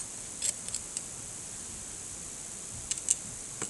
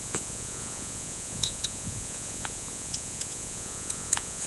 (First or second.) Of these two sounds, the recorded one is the first